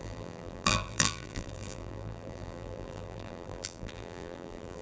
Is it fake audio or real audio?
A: fake